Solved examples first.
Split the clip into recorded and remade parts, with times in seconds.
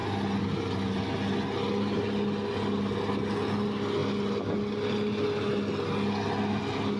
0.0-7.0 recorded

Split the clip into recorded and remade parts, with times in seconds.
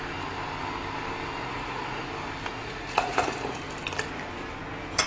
0.0-1.4 recorded; 1.4-2.1 remade; 2.1-2.5 recorded; 2.5-3.6 remade; 3.6-5.1 recorded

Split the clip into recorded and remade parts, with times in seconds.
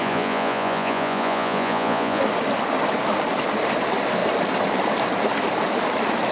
0.0-2.2 remade; 2.2-6.3 recorded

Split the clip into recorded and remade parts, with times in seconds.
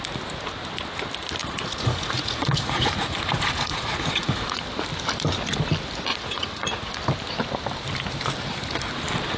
0.0-1.4 recorded; 1.4-4.6 remade; 4.6-6.1 recorded; 6.1-7.0 remade; 7.0-9.4 recorded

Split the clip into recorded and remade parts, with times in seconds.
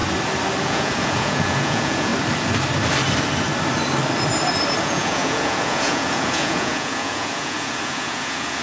0.0-0.6 recorded; 0.6-2.1 remade; 2.1-4.8 recorded; 4.8-8.6 remade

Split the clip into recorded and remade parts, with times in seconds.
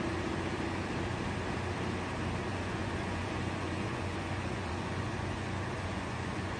0.0-2.5 recorded; 2.5-6.6 remade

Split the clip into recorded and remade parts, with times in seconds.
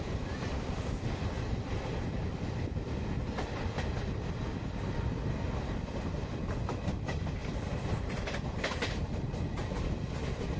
0.0-10.6 recorded